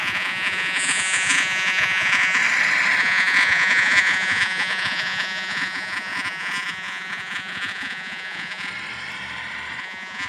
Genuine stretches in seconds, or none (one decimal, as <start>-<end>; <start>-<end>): 2.4-3.0; 8.7-9.8